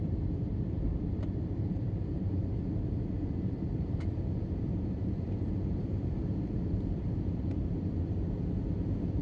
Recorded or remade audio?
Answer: remade